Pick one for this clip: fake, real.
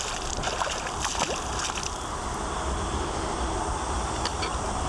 real